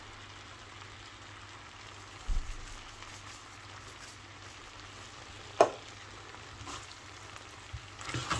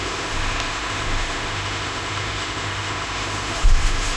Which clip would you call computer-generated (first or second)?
second